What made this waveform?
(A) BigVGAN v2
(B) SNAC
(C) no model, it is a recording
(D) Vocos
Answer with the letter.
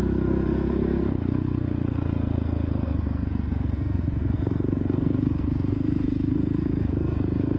B